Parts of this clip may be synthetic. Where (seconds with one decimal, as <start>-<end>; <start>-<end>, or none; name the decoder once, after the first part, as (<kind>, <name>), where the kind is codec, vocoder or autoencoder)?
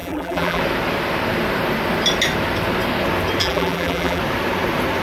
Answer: 0.0-0.6 (vocoder, BigVGAN v2); 3.4-4.2